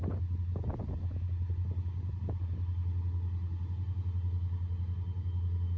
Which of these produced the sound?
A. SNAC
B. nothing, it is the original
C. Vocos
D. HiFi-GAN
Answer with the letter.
B